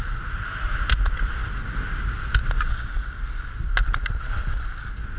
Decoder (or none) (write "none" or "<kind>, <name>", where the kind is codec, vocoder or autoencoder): none